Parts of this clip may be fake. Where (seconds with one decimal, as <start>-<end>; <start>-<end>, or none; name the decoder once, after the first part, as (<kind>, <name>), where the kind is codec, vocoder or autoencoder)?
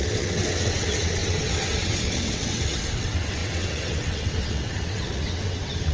0.0-5.9 (vocoder, WaveNeXt)